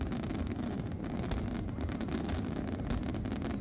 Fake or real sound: real